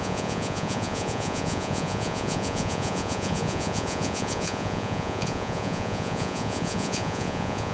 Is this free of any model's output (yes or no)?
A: no